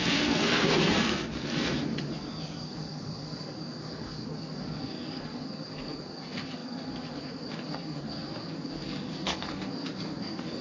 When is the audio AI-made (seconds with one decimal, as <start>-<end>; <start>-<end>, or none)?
0.0-10.6